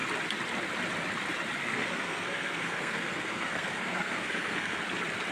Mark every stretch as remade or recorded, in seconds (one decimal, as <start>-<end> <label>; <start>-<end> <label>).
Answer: 0.0-1.6 recorded; 1.6-4.8 remade; 4.8-5.3 recorded